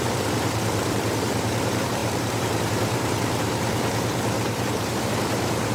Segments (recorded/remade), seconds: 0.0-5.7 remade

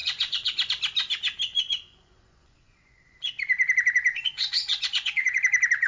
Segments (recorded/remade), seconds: 0.0-0.7 remade; 0.7-1.5 recorded; 1.5-3.3 remade; 3.3-4.1 recorded; 4.1-5.4 remade; 5.4-5.9 recorded

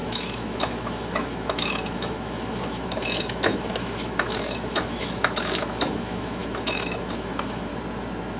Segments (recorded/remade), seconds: 0.0-7.7 remade; 7.7-8.4 recorded

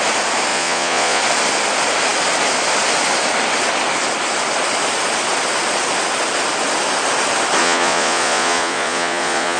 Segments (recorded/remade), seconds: 0.0-0.5 recorded; 0.5-1.2 remade; 1.2-7.6 recorded; 7.6-9.6 remade

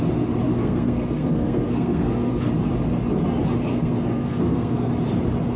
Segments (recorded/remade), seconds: 0.0-0.5 recorded; 0.5-2.5 remade; 2.5-3.7 recorded; 3.7-4.9 remade; 4.9-5.6 recorded

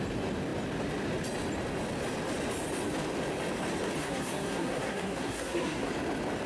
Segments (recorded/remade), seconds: 0.0-4.0 recorded; 4.0-5.9 remade; 5.9-6.5 recorded

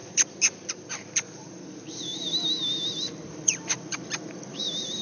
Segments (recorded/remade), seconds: 0.0-0.7 recorded; 0.7-2.1 remade; 2.1-2.9 recorded; 2.9-5.0 remade

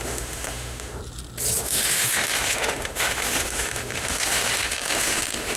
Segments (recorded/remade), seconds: 0.0-1.0 remade; 1.0-1.6 recorded; 1.6-5.6 remade